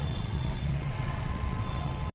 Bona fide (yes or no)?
no